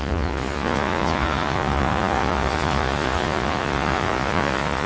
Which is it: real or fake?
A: fake